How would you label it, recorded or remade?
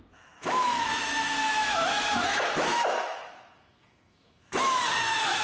remade